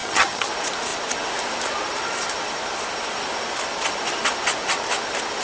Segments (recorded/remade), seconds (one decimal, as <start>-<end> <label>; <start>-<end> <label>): 0.0-0.5 remade; 0.5-5.4 recorded